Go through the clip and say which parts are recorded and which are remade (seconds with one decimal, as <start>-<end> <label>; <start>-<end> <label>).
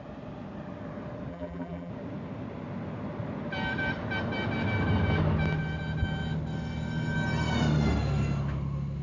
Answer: 0.0-1.3 recorded; 1.3-1.9 remade; 1.9-9.0 recorded